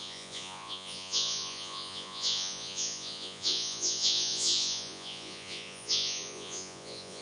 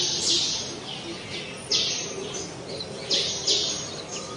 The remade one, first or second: first